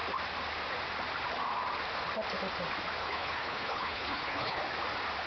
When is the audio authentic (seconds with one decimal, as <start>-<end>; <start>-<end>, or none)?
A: 0.0-3.0; 4.6-5.3